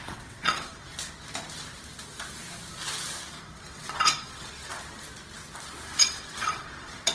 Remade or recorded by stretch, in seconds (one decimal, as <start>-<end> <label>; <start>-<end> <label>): 0.0-0.9 remade; 0.9-3.4 recorded; 3.4-4.7 remade; 4.7-6.0 recorded; 6.0-7.1 remade